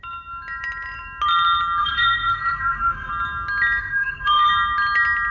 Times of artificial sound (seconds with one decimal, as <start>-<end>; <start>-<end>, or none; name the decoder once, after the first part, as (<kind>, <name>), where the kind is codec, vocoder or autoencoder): 1.8-3.1 (codec, SNAC); 3.8-4.5